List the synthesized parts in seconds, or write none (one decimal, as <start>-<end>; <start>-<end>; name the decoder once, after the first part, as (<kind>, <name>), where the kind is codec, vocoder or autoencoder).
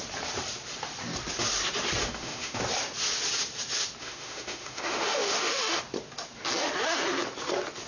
2.0-2.6 (autoencoder, DAC-VAE); 4.0-5.8